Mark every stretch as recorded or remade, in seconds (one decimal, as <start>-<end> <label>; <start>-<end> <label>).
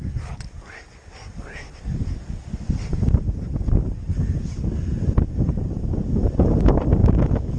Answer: 0.0-7.0 recorded; 7.0-7.6 remade